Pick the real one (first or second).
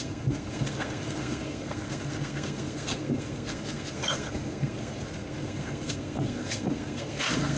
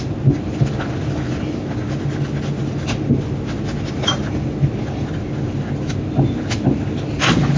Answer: second